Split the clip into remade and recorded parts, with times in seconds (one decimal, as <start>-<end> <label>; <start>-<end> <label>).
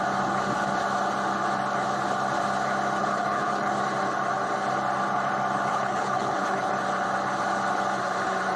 0.0-3.0 recorded; 3.0-3.7 remade; 3.7-5.7 recorded; 5.7-6.7 remade; 6.7-8.6 recorded